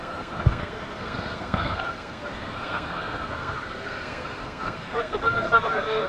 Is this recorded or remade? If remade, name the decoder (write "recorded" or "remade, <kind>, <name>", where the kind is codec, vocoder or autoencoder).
remade, codec, SNAC